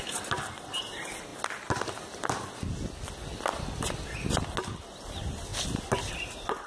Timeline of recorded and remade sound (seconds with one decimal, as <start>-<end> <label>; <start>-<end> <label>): 0.0-6.7 recorded